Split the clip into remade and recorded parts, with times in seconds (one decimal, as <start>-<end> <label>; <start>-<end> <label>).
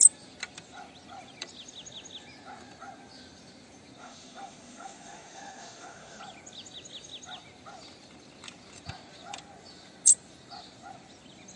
0.0-4.0 recorded; 4.0-6.2 remade; 6.2-11.6 recorded